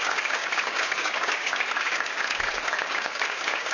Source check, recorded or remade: remade